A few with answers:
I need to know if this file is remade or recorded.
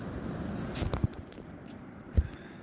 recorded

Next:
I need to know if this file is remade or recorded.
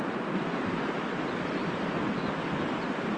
recorded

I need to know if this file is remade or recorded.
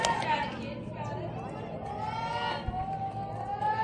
recorded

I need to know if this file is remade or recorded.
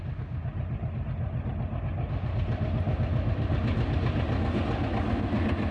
recorded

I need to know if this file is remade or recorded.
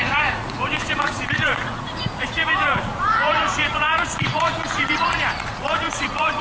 remade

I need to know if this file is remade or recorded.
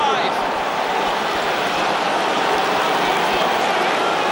recorded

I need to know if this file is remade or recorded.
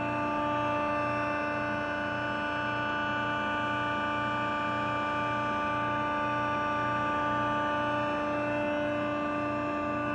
recorded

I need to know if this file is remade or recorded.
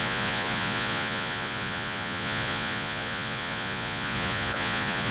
remade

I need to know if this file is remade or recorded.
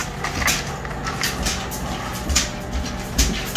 recorded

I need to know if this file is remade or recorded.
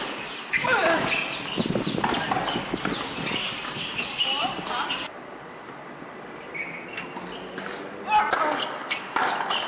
recorded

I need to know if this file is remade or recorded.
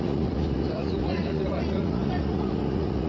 remade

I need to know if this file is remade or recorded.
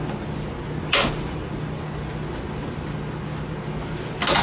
recorded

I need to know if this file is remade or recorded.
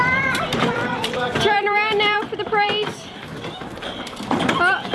remade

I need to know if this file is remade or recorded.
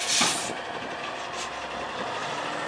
recorded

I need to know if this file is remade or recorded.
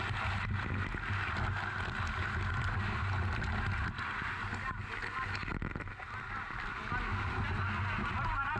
recorded